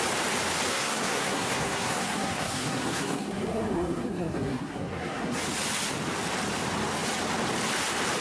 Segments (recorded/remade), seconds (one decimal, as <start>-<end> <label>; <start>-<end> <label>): 0.0-0.7 recorded; 0.7-5.4 remade; 5.4-8.2 recorded